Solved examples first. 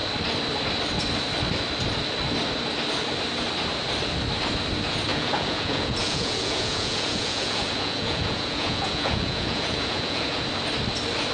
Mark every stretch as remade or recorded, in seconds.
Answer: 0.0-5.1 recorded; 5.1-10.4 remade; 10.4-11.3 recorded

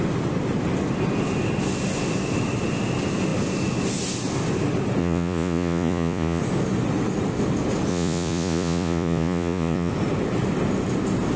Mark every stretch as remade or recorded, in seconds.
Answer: 0.0-5.0 recorded; 5.0-6.4 remade; 6.4-7.9 recorded; 7.9-9.9 remade; 9.9-11.4 recorded